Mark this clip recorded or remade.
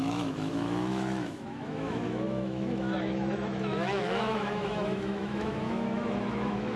remade